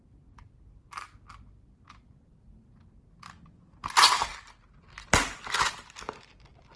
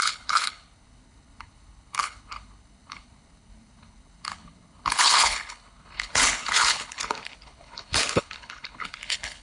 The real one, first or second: first